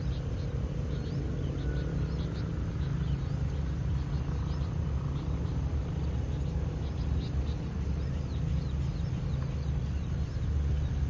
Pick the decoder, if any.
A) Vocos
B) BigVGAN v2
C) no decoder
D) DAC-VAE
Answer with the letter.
C